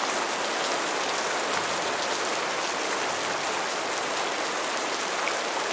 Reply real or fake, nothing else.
real